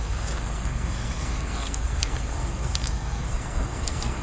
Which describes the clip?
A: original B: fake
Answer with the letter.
B